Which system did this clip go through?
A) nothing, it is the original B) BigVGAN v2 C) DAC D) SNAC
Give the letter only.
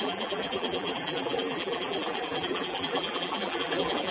B